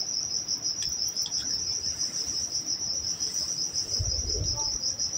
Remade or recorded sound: recorded